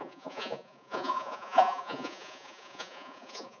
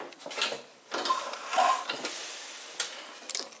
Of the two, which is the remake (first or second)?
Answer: first